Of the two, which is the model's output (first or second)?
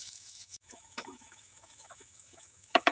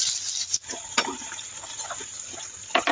first